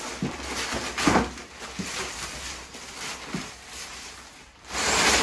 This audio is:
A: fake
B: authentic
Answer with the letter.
B